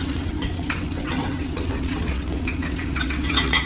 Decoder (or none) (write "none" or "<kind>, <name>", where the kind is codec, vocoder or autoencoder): vocoder, WaveNeXt